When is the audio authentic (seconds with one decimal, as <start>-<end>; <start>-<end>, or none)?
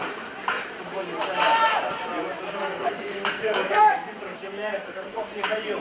0.0-2.6; 3.8-4.3; 5.3-5.8